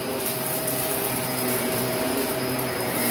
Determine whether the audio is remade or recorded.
remade